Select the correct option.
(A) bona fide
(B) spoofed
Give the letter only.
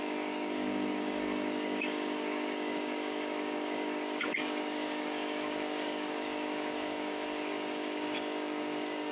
B